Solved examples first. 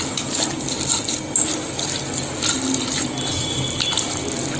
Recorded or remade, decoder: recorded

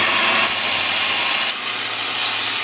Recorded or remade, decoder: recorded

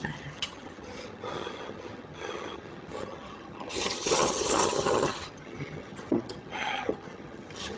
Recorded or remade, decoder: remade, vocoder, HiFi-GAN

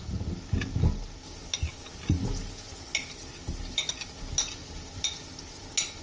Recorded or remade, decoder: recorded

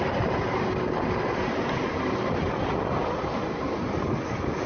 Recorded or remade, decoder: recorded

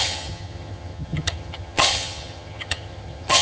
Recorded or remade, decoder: remade, vocoder, HiFi-GAN